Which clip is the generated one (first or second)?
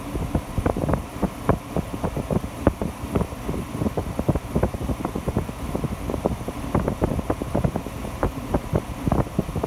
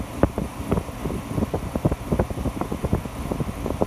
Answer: first